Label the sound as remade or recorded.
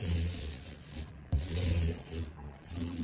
remade